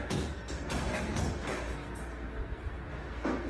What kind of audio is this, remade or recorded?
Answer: remade